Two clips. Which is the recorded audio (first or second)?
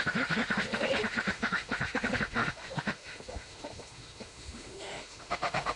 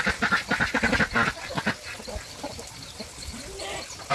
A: second